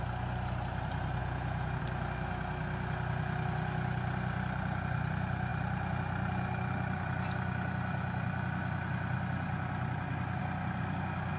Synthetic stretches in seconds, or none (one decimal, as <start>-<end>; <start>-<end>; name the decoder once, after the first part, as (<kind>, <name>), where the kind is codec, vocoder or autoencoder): 1.2-1.8 (vocoder, Vocos)